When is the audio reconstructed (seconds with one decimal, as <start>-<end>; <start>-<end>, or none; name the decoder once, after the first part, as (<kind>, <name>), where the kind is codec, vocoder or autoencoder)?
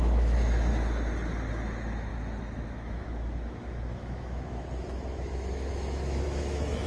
0.0-0.7 (autoencoder, DAC-VAE); 1.5-6.9